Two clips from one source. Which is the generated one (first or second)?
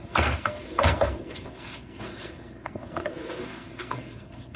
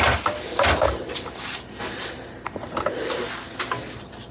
first